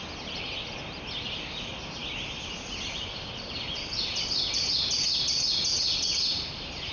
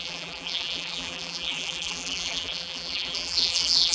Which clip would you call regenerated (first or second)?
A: second